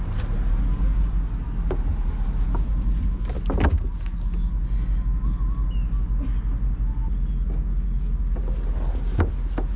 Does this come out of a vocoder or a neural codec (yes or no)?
no